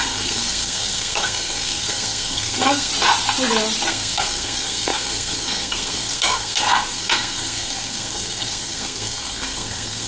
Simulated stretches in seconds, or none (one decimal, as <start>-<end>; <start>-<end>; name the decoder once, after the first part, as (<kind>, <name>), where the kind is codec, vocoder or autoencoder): 0.0-2.9 (codec, SNAC); 3.9-10.1